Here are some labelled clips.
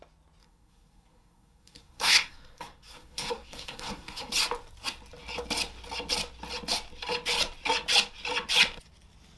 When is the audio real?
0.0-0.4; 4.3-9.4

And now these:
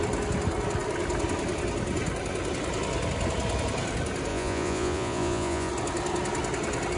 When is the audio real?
0.0-4.3; 5.7-7.0

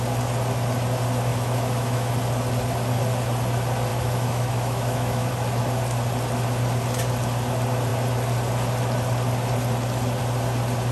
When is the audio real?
0.0-1.3; 2.1-3.9; 5.3-10.9

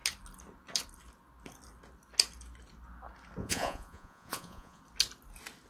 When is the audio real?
0.0-3.4; 4.8-5.7

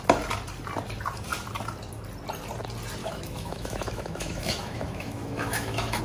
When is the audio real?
0.0-3.0

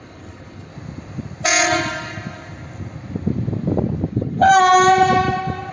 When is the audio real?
0.7-4.1; 4.5-5.7

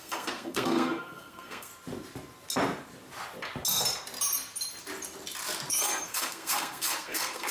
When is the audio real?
1.7-5.7